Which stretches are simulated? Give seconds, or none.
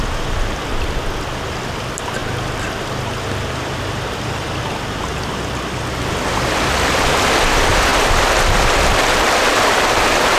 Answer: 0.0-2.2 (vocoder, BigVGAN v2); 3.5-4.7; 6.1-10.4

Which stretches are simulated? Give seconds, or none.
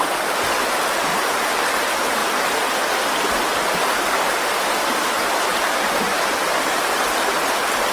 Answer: 1.1-1.6 (vocoder, BigVGAN v2); 5.5-6.4